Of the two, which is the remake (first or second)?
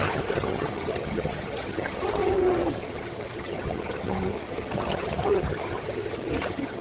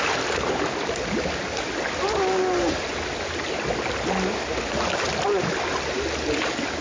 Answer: first